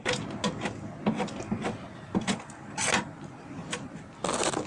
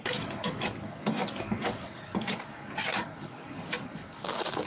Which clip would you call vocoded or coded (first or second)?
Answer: second